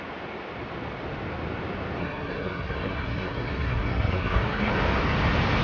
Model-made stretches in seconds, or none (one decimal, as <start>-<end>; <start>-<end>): 2.0-4.7